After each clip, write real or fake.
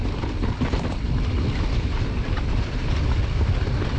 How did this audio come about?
real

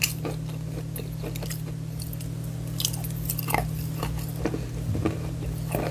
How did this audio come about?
real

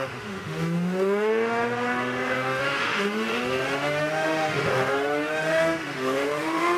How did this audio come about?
fake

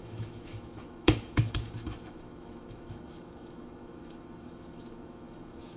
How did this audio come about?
fake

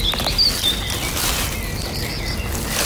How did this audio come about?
real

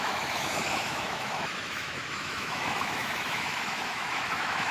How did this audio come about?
fake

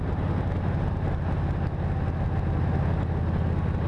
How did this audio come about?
real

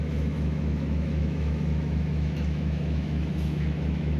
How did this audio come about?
fake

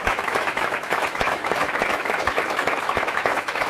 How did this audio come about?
fake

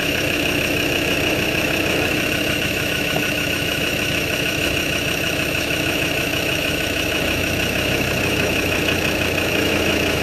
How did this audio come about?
fake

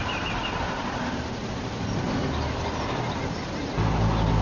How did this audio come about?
real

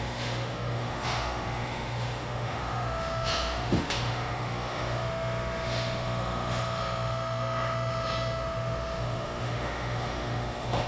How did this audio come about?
fake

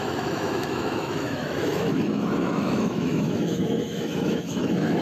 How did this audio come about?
fake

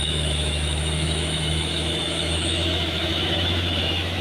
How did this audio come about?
fake